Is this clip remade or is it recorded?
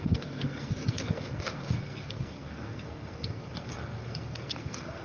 remade